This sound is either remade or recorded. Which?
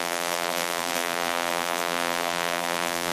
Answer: remade